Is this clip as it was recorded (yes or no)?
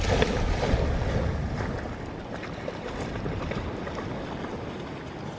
yes